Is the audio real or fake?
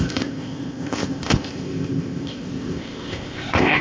fake